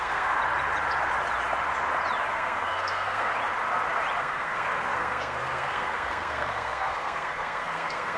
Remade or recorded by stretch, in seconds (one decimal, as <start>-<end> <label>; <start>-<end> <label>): 0.0-0.4 remade; 0.4-2.3 recorded; 2.3-3.3 remade; 3.3-4.2 recorded; 4.2-8.2 remade